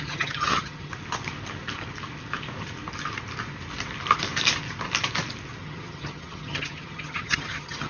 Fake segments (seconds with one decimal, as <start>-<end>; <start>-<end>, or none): 0.0-0.9; 5.6-7.9